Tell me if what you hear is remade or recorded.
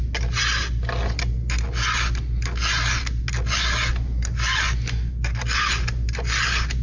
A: recorded